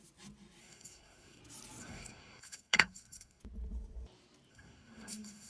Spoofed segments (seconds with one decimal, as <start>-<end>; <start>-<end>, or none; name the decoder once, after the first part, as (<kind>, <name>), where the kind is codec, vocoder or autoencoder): 0.6-1.4 (codec, SNAC); 1.8-3.4; 4.5-5.5